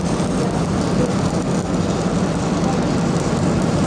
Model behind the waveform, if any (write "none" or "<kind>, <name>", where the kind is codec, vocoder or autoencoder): none